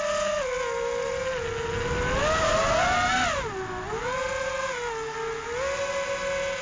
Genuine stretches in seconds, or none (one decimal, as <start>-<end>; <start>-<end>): 0.0-6.6